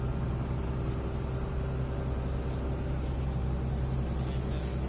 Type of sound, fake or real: real